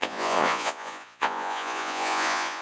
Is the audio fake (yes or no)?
yes